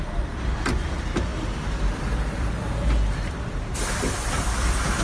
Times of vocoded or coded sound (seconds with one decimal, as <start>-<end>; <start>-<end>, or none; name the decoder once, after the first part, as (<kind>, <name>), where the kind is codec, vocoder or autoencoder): 0.0-5.0 (vocoder, BigVGAN v2)